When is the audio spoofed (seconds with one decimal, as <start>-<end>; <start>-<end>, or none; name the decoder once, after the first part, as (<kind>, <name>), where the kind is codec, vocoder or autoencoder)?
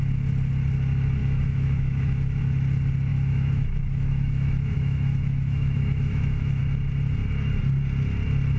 1.2-2.4 (autoencoder, DAC-VAE); 3.1-6.6